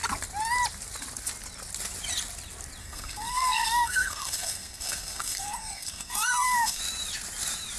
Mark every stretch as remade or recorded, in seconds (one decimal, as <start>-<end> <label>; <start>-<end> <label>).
0.0-2.8 recorded; 2.8-6.8 remade; 6.8-7.8 recorded